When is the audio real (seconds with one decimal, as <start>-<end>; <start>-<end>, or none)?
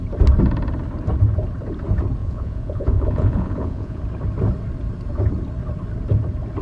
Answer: 0.0-2.2; 4.0-6.6